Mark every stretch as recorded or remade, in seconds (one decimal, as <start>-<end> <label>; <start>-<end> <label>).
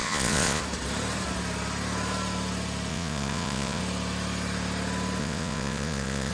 0.0-0.6 remade; 0.6-2.9 recorded; 2.9-3.8 remade; 3.8-5.2 recorded; 5.2-6.3 remade